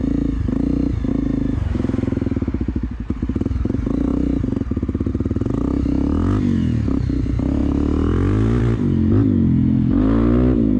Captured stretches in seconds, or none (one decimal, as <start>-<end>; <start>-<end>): 0.0-10.8